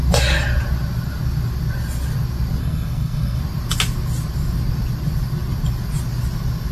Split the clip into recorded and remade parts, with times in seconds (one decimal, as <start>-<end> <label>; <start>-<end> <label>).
0.0-2.6 recorded; 2.6-3.4 remade; 3.4-6.7 recorded